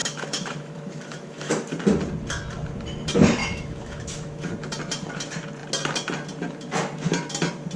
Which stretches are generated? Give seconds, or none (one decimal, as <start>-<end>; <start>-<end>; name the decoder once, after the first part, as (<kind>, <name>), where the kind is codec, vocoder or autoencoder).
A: 0.0-1.5 (autoencoder, DAC-VAE); 3.4-4.5